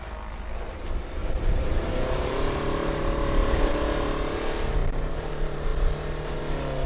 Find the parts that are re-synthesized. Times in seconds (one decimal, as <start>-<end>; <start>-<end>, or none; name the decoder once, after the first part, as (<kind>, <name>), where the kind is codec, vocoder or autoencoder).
1.2-3.7 (vocoder, BigVGAN v2); 4.8-5.3